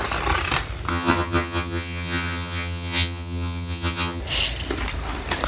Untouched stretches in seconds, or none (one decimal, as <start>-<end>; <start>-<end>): 0.0-0.9; 4.2-5.5